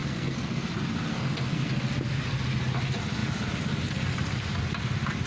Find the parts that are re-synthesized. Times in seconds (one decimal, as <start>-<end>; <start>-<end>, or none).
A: 0.0-0.7; 1.1-1.7